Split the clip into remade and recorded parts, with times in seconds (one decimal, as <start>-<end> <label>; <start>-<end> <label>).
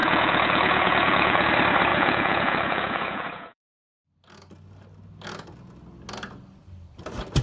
0.0-1.5 remade; 1.5-1.9 recorded; 1.9-3.7 remade; 3.7-7.4 recorded